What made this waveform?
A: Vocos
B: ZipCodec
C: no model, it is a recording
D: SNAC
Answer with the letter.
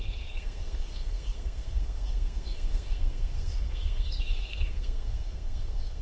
D